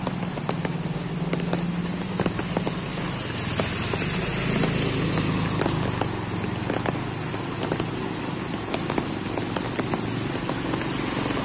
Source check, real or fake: real